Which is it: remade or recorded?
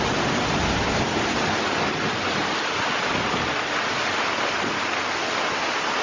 recorded